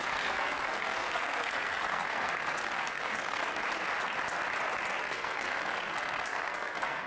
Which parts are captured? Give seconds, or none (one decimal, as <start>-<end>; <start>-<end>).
3.6-5.0